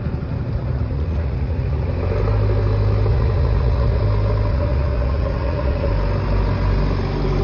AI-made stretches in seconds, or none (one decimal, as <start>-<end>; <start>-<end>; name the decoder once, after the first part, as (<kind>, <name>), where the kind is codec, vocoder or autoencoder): 0.6-1.9 (vocoder, Vocos); 3.1-4.0; 4.5-5.9